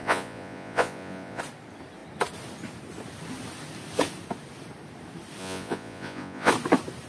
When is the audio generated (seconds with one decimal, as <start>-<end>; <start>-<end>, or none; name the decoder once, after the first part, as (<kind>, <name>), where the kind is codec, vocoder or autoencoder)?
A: 0.0-1.4 (vocoder, Vocos); 5.4-6.5